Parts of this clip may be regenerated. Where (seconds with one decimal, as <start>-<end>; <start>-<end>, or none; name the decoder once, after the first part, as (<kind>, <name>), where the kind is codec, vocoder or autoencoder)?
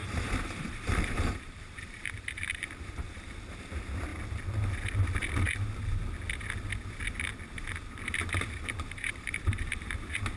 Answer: 0.0-4.1 (vocoder, BigVGAN v2); 7.7-10.4